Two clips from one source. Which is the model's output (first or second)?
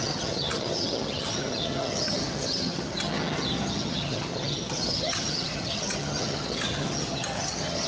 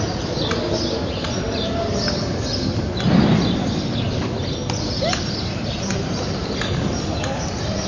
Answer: first